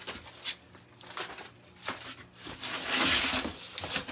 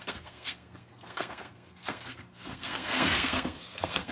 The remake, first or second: second